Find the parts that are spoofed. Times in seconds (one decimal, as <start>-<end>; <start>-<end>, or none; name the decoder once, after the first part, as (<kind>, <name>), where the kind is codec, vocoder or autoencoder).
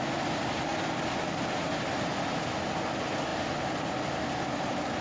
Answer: 0.0-0.7 (vocoder, BigVGAN v2); 1.7-5.0